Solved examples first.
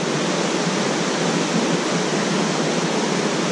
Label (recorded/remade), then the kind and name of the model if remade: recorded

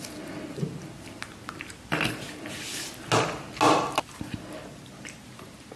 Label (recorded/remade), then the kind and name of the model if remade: recorded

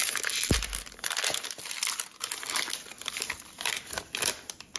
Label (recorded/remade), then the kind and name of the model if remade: recorded